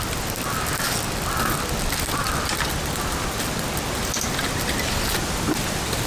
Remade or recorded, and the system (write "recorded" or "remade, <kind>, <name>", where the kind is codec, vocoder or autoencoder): recorded